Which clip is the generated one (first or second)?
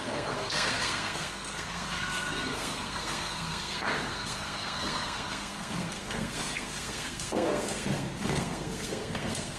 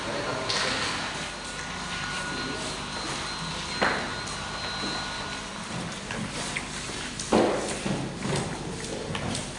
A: first